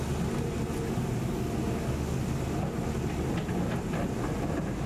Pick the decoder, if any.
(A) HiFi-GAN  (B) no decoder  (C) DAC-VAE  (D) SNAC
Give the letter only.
B